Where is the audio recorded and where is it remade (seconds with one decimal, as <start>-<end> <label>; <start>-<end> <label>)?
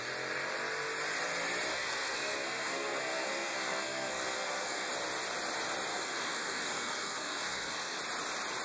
0.0-1.7 recorded; 1.7-4.9 remade; 4.9-5.9 recorded; 5.9-8.0 remade; 8.0-8.6 recorded